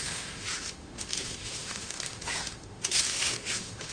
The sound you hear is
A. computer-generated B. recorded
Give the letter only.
A